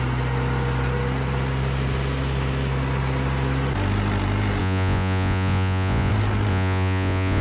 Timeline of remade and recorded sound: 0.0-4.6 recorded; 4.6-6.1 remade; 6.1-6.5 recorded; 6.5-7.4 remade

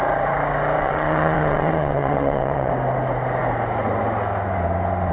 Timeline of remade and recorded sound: 0.0-0.8 recorded; 0.8-2.7 remade; 2.7-5.1 recorded

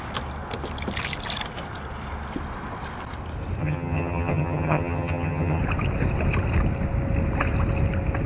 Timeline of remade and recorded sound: 0.0-3.6 recorded; 3.6-5.6 remade; 5.6-8.3 recorded

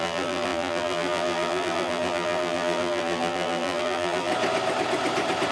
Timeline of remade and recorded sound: 0.0-4.3 remade; 4.3-5.5 recorded